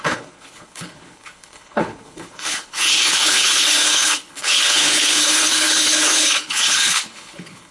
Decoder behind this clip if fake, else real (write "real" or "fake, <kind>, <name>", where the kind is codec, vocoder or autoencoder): fake, codec, HILCodec